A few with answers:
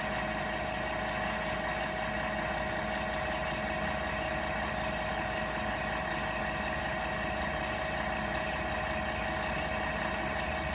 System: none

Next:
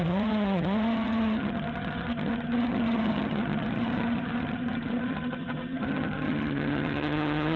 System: vocoder, HiFi-GAN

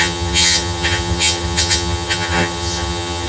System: vocoder, HiFi-GAN